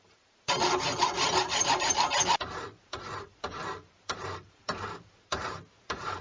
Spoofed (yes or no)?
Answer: yes